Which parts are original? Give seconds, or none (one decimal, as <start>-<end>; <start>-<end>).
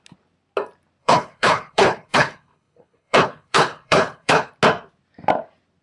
0.0-1.0; 4.5-5.8